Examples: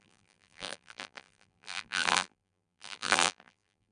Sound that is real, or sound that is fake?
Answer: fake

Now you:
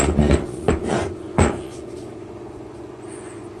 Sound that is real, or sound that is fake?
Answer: fake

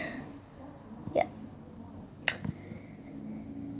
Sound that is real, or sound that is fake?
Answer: real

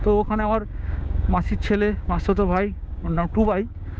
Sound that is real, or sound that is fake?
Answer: fake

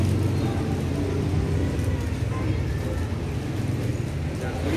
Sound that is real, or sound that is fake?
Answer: real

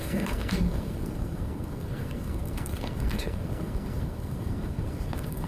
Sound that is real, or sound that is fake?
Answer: fake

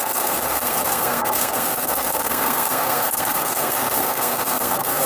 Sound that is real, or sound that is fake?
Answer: fake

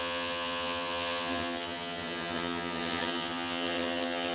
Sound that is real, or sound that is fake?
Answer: fake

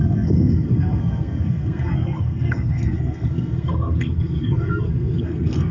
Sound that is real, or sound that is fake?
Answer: fake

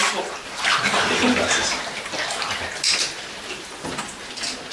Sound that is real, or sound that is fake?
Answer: real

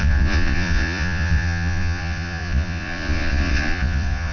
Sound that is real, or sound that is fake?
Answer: fake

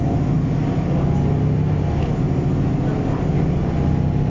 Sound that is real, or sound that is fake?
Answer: real